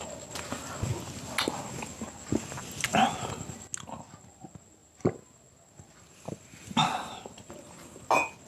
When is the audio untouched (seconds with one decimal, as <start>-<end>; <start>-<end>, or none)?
0.0-4.8; 7.5-8.5